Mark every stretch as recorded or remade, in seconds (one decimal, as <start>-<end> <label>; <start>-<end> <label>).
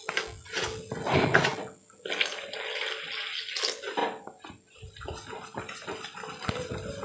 0.0-7.0 recorded